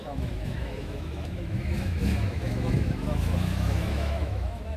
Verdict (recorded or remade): remade